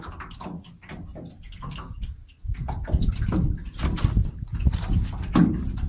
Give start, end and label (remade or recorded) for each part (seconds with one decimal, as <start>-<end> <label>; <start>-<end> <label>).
0.0-5.9 recorded